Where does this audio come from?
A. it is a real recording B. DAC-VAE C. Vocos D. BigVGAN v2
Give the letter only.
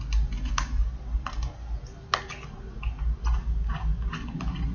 A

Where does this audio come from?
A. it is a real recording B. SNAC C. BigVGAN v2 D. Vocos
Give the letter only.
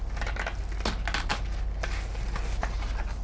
A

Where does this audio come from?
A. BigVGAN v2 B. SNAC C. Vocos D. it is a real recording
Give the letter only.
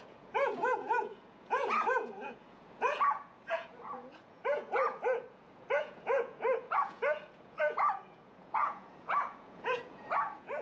C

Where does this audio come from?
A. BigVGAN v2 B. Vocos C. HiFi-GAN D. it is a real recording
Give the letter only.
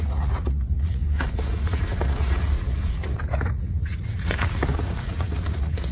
B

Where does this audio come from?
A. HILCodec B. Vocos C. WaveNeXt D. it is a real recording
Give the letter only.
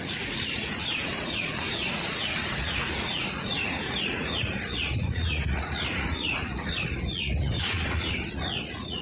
B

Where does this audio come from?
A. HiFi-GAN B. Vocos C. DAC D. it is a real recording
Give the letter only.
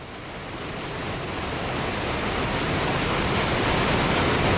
D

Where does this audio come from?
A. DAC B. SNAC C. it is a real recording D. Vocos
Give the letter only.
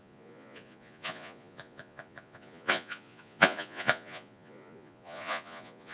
D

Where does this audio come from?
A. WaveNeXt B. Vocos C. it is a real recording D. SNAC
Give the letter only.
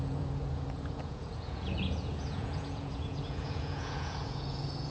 B